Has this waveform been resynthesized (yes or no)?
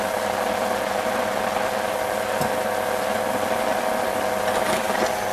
no